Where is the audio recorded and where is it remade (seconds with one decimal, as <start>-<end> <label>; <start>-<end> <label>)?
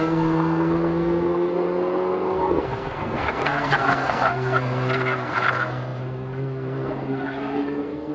0.0-8.1 remade